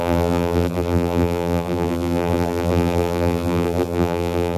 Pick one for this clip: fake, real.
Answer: fake